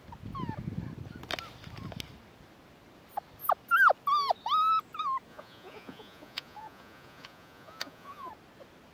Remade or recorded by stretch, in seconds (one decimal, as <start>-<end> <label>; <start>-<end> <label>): 0.0-5.3 recorded; 5.3-8.3 remade; 8.3-8.9 recorded